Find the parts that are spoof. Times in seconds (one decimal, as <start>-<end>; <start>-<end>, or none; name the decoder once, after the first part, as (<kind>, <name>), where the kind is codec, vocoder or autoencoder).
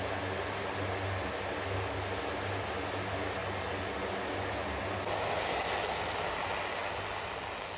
none